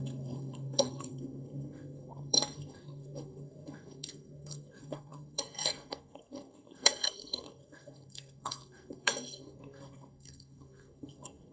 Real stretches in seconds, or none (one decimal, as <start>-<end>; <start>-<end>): none